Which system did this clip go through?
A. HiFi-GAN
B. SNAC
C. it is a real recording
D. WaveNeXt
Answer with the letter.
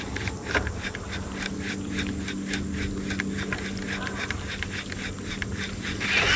C